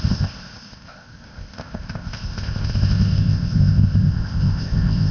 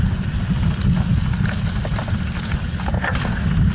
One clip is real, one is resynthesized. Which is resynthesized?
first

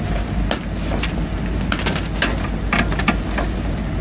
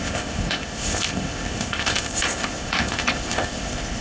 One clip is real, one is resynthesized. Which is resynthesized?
second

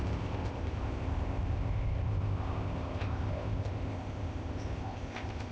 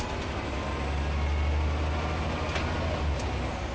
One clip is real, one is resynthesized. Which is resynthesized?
first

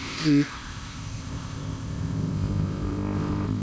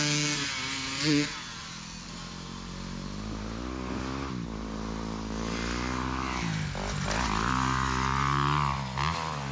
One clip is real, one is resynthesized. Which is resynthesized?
first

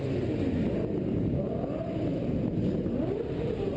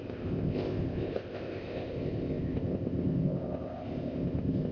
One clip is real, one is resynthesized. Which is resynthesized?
second